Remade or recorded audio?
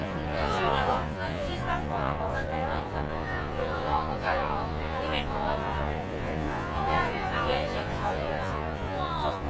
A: remade